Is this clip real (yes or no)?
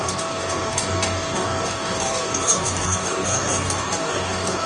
no